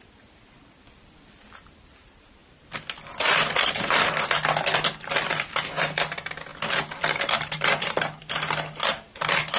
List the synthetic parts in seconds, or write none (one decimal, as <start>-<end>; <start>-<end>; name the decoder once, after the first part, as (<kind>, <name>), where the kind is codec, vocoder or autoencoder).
none

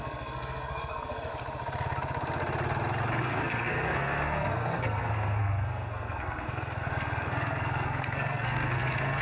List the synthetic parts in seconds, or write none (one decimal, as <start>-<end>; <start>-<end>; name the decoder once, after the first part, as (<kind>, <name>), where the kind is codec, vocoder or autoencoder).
0.0-1.3 (codec, SNAC); 3.2-9.2

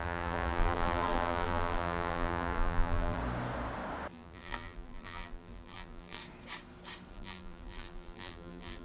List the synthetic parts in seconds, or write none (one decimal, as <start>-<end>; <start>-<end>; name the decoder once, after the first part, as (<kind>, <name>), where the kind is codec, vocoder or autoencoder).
0.0-3.2 (vocoder, BigVGAN v2); 4.1-6.2; 7.1-8.8

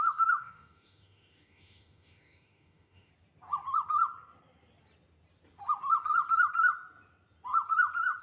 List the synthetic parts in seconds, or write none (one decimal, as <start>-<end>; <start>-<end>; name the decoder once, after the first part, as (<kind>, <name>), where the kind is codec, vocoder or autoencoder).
0.0-3.1 (autoencoder, DAC-VAE)